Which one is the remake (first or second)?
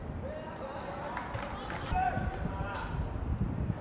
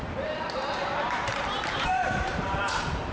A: second